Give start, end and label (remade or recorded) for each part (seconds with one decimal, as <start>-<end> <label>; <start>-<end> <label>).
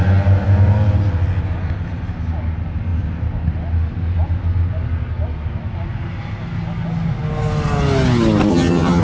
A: 0.0-8.5 recorded; 8.5-9.0 remade